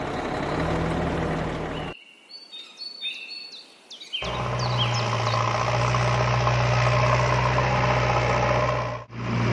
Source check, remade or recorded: recorded